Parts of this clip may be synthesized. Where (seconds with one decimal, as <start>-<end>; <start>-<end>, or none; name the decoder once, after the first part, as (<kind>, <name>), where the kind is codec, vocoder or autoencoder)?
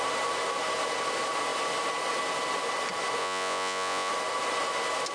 3.2-4.1 (vocoder, Vocos)